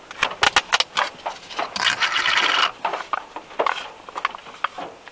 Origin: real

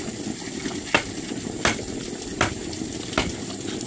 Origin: real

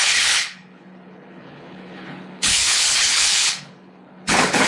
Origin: fake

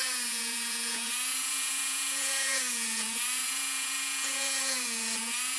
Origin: fake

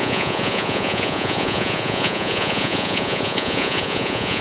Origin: fake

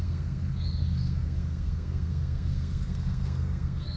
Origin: fake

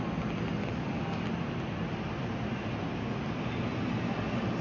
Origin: real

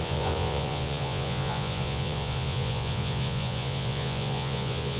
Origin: fake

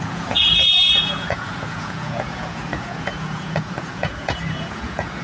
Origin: fake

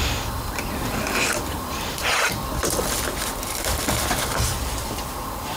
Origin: fake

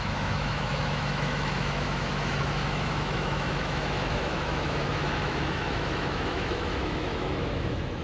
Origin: fake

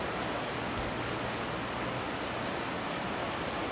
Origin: real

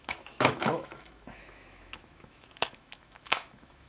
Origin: fake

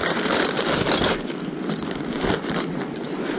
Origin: real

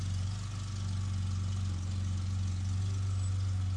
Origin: real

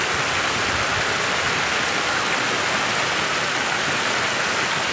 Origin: real